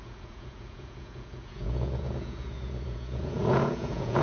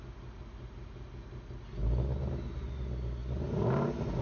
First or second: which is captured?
second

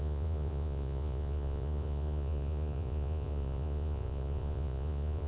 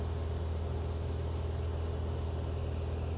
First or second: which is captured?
second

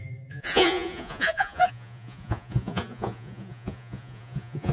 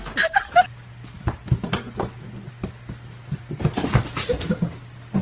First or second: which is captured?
second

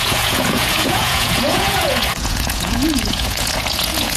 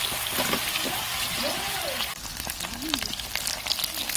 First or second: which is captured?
second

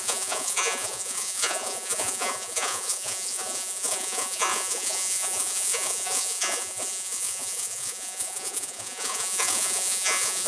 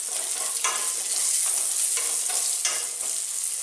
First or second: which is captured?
second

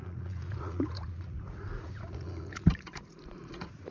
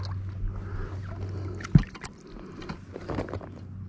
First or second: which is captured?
second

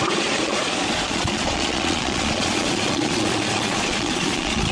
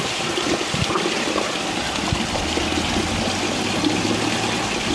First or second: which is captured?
second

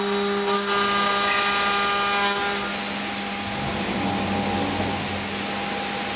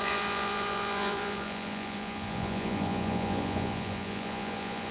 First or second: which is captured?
first